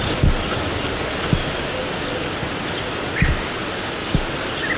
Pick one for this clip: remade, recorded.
recorded